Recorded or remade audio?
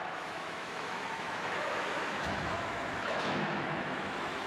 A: remade